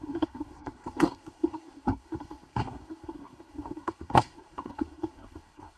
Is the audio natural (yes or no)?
no